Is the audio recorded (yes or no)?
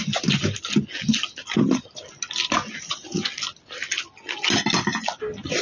yes